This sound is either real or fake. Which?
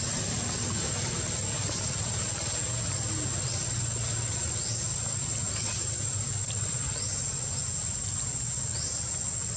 real